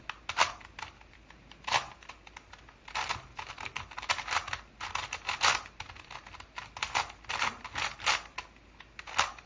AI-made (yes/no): no